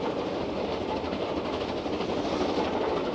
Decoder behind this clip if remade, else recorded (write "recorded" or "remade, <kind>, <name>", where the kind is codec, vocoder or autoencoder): recorded